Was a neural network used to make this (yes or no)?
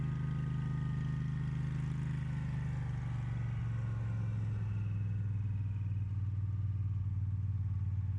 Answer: no